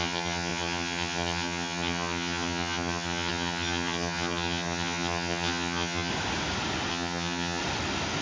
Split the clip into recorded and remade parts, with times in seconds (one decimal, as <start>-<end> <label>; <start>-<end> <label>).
0.0-6.1 remade; 6.1-6.9 recorded; 6.9-7.6 remade; 7.6-8.2 recorded